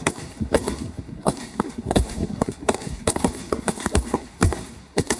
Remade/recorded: remade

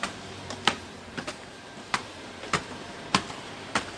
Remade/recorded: remade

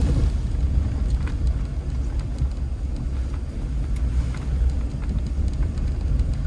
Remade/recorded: recorded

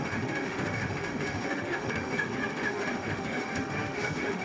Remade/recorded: remade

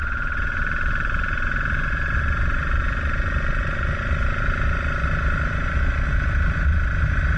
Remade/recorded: recorded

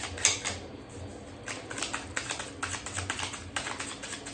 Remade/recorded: recorded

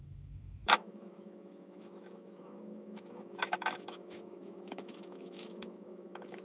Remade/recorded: remade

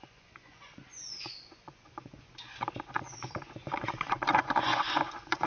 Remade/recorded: remade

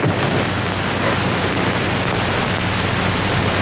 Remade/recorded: recorded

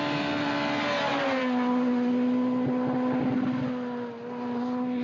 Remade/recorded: recorded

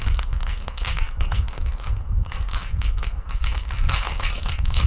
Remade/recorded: remade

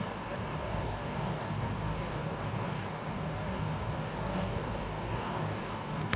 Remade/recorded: remade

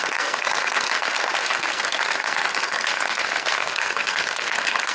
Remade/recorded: remade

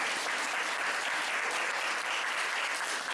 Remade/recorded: recorded